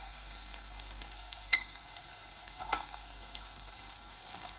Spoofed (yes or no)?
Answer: yes